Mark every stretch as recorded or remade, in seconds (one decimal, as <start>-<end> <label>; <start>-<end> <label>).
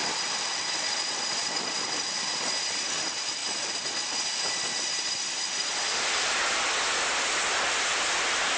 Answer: 0.0-3.4 remade; 3.4-4.1 recorded; 4.1-8.6 remade